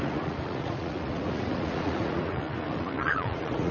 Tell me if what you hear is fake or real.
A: fake